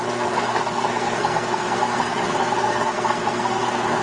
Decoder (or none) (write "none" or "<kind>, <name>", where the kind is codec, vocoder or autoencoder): codec, SNAC